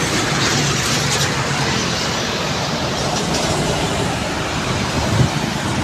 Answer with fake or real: fake